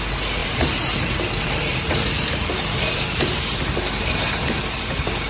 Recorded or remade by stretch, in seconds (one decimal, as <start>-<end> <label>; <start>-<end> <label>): 0.0-0.4 recorded; 0.4-3.6 remade; 3.6-5.3 recorded